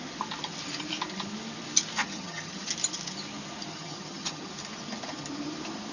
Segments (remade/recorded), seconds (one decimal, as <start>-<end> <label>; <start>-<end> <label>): 0.0-2.0 recorded; 2.0-2.7 remade; 2.7-3.7 recorded; 3.7-4.5 remade; 4.5-5.9 recorded

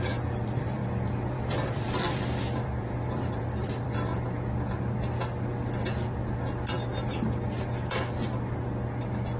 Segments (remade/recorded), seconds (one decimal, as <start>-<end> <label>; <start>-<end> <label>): 0.0-0.8 remade; 0.8-1.3 recorded; 1.3-4.1 remade; 4.1-9.4 recorded